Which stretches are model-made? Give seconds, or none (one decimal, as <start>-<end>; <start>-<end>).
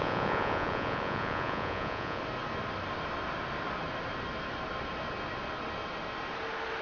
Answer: 0.0-2.2